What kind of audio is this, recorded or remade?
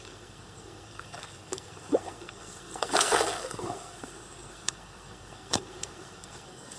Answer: remade